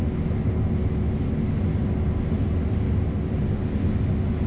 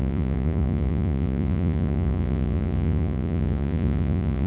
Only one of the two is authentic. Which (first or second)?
first